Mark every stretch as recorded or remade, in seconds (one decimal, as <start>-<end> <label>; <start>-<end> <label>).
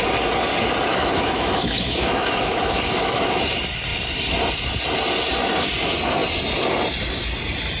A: 0.0-0.9 recorded; 0.9-3.4 remade; 3.4-7.8 recorded